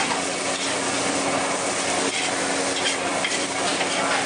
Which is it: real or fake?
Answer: real